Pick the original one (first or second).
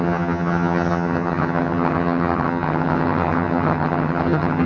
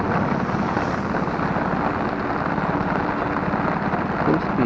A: second